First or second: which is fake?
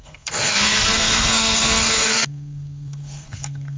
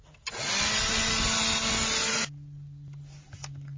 first